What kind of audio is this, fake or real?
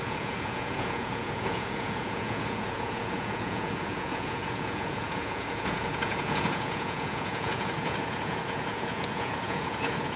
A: fake